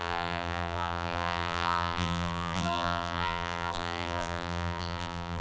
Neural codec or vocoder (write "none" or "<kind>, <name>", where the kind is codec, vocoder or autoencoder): vocoder, BigVGAN v2